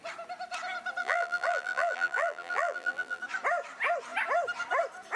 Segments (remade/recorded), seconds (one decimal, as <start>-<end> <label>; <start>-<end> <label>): 0.0-1.0 recorded; 1.0-3.2 remade; 3.2-5.2 recorded